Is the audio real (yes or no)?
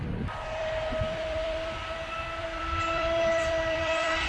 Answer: no